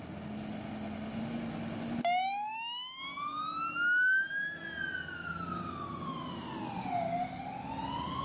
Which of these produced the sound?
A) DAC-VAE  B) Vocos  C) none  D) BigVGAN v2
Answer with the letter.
C